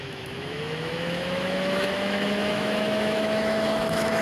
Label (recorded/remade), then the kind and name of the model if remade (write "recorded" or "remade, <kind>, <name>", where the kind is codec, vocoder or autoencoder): remade, autoencoder, DAC-VAE